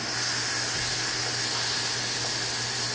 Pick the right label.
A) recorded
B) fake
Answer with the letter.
A